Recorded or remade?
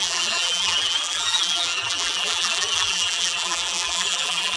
remade